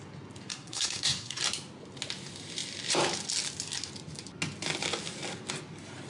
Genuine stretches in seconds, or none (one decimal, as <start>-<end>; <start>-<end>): 0.0-0.5; 1.4-6.1